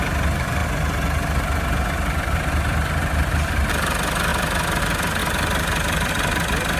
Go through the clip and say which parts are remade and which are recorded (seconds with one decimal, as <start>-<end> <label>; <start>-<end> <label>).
0.0-0.6 remade; 0.6-2.2 recorded; 2.2-4.3 remade; 4.3-4.8 recorded; 4.8-6.8 remade